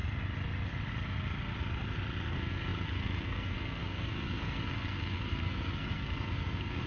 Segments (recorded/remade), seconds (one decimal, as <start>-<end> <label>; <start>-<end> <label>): 0.0-2.3 recorded; 2.3-6.9 remade